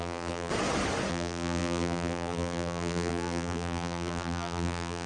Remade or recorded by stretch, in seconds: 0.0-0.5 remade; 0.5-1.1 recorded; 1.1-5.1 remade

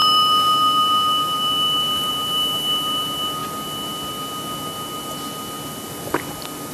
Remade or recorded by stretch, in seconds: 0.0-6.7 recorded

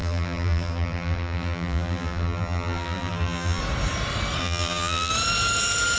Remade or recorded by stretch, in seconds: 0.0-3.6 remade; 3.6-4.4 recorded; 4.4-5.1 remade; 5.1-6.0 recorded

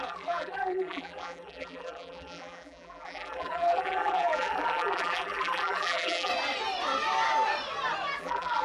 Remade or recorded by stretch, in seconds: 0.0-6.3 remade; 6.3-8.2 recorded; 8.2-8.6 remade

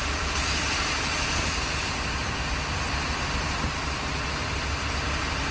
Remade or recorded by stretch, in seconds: 0.0-5.5 recorded